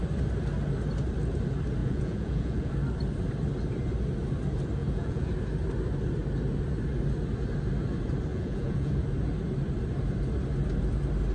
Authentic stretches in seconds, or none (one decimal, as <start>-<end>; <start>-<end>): 0.0-1.8; 2.7-4.8; 5.3-8.3; 9.0-11.3